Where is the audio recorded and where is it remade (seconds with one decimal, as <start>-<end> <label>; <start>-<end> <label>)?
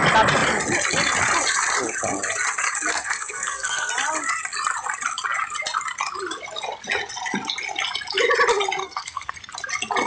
0.0-2.9 recorded; 2.9-3.9 remade; 3.9-8.8 recorded; 8.8-9.3 remade; 9.3-10.1 recorded